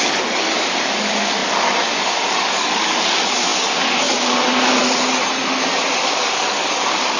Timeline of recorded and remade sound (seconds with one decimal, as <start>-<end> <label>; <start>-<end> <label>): 0.0-4.8 remade; 4.8-6.0 recorded; 6.0-7.2 remade